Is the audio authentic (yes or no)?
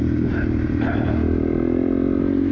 no